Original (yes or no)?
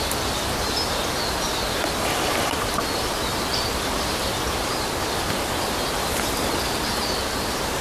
yes